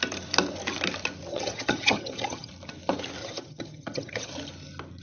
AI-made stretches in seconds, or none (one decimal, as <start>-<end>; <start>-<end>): 1.3-2.5; 3.2-4.3